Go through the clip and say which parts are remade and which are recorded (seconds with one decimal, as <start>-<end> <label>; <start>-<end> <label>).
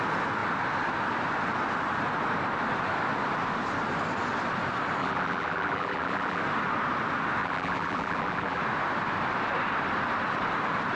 0.0-5.0 recorded; 5.0-6.4 remade; 6.4-7.4 recorded; 7.4-8.6 remade; 8.6-11.0 recorded